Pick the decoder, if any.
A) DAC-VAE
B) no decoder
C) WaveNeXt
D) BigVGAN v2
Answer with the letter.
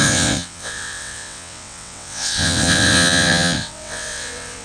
C